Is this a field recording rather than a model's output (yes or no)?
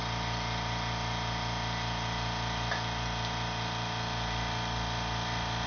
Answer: yes